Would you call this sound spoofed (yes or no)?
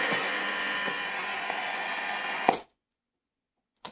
yes